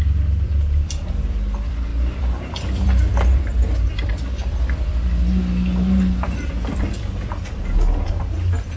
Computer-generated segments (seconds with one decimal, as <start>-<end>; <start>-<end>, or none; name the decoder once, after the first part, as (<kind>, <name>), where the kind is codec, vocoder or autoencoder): 0.0-8.8 (vocoder, BigVGAN v2)